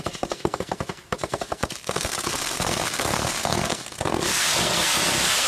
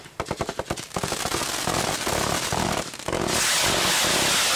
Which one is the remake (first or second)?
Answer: first